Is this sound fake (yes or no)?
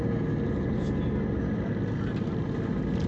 no